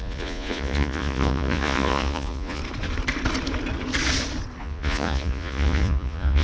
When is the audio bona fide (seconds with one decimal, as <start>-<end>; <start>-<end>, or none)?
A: 2.6-4.6